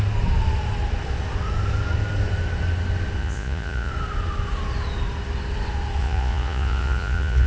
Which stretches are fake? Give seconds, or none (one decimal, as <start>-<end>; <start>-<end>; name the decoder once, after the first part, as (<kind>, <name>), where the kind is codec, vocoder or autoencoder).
3.2-3.9 (vocoder, Vocos); 6.0-7.5